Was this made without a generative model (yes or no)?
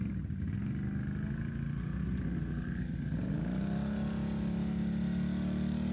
yes